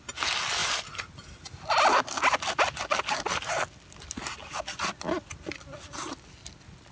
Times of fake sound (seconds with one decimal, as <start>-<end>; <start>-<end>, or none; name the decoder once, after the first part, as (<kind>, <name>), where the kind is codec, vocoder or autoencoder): none